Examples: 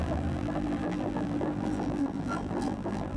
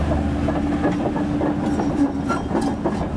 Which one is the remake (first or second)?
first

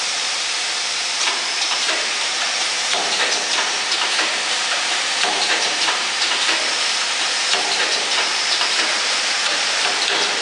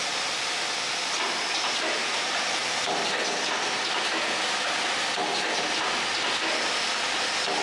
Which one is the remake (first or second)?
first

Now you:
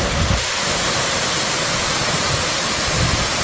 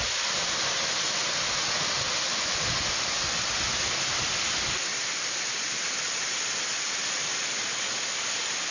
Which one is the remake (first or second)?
first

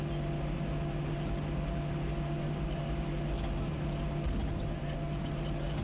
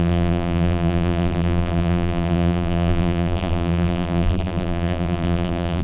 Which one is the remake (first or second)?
second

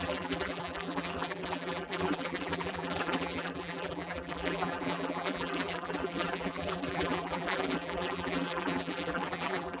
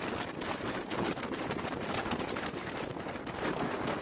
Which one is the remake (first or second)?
first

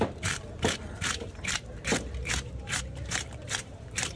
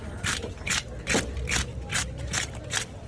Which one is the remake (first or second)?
first